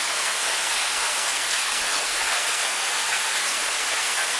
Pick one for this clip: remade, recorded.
remade